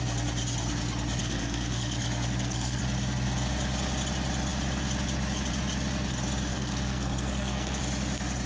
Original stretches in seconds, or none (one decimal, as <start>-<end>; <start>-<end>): 0.0-1.2; 2.8-6.5; 7.8-8.5